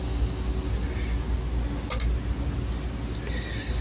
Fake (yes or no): no